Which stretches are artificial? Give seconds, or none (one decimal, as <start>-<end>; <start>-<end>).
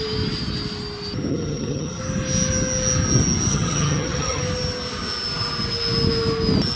1.3-2.0; 3.5-4.4